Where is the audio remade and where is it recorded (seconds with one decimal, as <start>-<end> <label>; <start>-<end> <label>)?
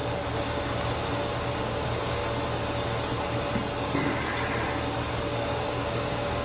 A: 0.0-1.6 recorded; 1.6-2.2 remade; 2.2-5.1 recorded; 5.1-6.4 remade